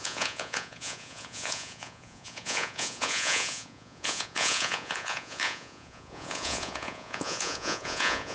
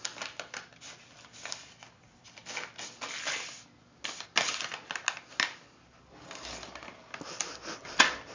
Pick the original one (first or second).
second